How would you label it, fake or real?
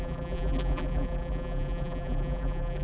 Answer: fake